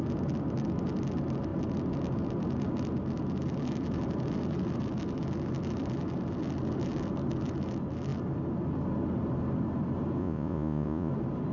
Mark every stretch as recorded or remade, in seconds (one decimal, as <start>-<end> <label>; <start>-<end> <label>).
0.0-10.2 recorded; 10.2-11.1 remade; 11.1-11.5 recorded